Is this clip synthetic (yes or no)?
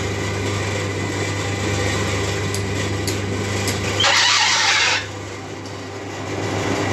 no